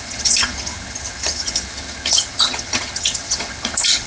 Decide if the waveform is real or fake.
fake